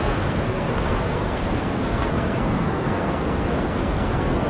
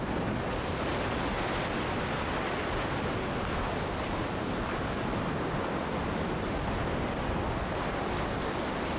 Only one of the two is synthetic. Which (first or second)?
first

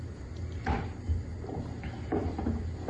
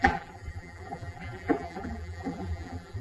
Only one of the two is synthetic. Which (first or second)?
second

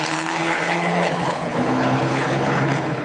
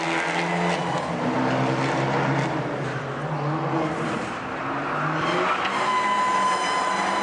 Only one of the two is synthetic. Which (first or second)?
first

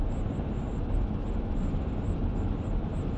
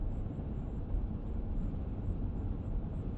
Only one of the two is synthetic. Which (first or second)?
second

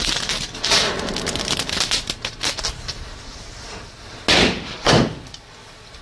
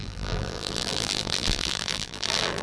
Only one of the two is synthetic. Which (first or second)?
second